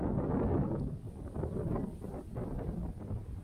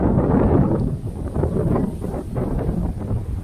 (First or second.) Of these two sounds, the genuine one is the first